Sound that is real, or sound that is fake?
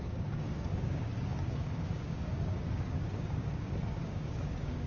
fake